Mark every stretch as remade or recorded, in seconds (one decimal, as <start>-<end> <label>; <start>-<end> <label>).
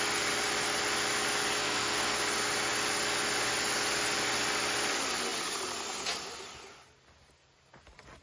0.0-1.6 recorded; 1.6-2.2 remade; 2.2-8.2 recorded